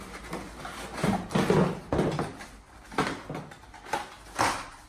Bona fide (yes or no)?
yes